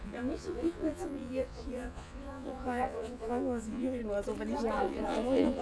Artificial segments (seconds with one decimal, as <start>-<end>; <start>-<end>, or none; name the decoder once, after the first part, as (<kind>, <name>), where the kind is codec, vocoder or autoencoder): 0.0-4.0 (vocoder, Vocos); 4.7-5.6